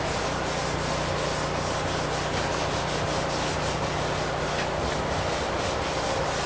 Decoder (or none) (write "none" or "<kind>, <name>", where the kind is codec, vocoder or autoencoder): none